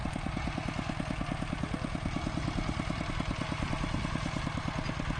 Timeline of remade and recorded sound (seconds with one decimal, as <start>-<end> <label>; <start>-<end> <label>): 0.0-5.2 recorded